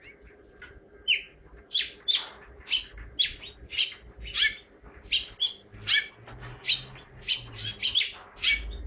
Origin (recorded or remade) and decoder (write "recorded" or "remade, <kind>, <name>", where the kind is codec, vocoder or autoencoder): recorded